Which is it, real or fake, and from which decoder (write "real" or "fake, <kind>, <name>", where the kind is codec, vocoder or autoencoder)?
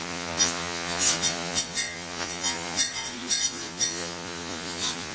fake, vocoder, Vocos